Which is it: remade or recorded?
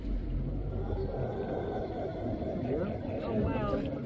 recorded